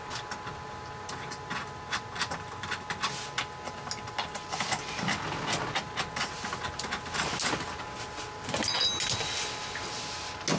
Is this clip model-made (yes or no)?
no